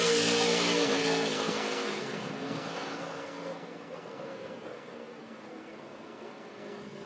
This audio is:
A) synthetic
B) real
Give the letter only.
A